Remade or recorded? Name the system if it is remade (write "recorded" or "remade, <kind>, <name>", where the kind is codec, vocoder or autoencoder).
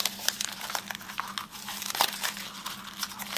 recorded